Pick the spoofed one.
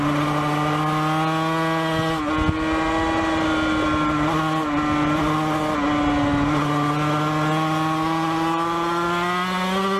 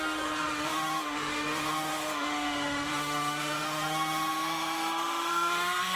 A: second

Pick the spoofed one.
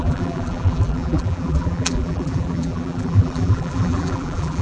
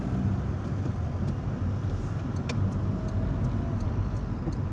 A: first